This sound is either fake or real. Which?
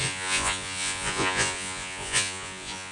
fake